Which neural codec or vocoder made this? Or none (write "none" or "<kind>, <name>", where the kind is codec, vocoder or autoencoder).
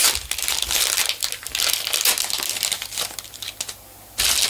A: none